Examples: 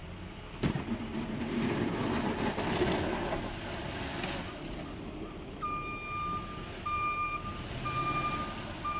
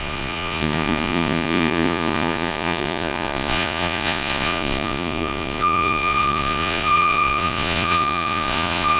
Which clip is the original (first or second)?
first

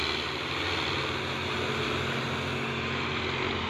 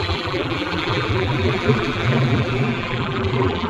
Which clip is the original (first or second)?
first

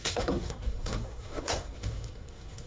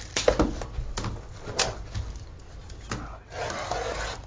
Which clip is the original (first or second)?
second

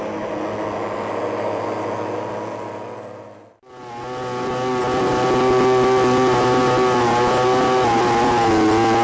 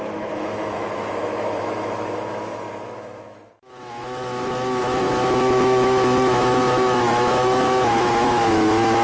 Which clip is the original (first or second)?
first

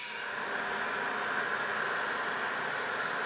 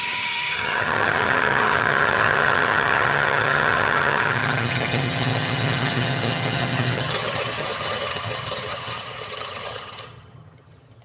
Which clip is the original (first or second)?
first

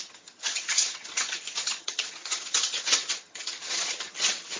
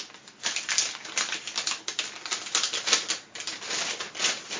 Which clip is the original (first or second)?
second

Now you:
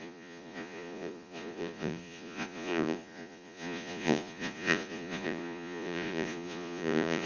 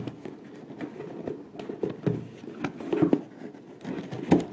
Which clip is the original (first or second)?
second